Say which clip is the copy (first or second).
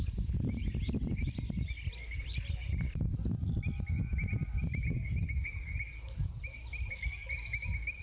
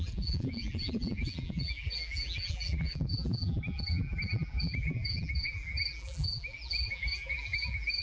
second